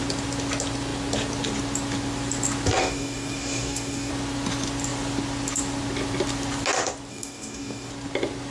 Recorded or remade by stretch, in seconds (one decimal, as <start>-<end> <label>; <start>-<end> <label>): 0.0-2.8 recorded; 2.8-4.1 remade; 4.1-7.1 recorded; 7.1-7.9 remade; 7.9-8.5 recorded